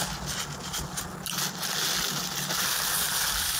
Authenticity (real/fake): real